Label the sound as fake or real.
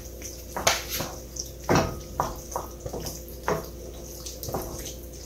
real